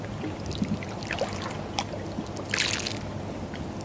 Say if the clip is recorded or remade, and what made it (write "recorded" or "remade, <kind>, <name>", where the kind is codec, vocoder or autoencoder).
recorded